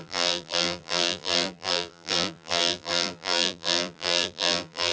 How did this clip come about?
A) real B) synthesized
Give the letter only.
B